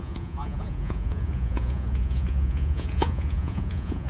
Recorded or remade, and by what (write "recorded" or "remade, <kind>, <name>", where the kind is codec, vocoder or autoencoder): remade, vocoder, Vocos